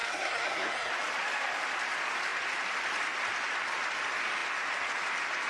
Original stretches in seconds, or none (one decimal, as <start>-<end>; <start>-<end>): 0.9-5.5